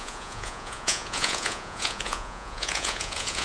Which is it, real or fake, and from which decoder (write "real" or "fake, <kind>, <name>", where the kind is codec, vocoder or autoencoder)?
fake, vocoder, Vocos